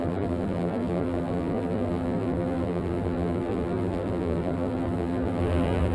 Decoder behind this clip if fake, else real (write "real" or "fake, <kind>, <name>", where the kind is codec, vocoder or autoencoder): fake, vocoder, BigVGAN v2